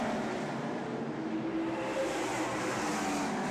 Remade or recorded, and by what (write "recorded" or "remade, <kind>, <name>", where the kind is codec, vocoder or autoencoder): recorded